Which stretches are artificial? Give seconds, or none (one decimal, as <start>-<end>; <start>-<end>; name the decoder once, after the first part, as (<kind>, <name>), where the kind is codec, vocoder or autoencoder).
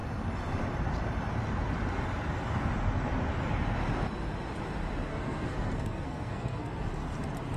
5.1-6.9 (codec, SNAC)